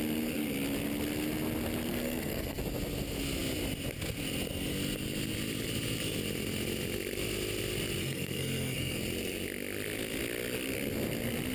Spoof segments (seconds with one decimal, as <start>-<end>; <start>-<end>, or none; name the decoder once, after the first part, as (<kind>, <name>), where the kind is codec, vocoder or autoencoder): 1.9-2.6 (codec, SNAC); 8.0-9.0